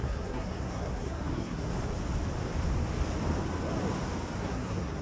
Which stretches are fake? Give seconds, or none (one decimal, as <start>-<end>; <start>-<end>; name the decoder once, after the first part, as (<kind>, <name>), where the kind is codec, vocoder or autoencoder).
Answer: 0.0-1.7 (codec, SNAC); 4.4-5.0